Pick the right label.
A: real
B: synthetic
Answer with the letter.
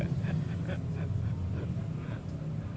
A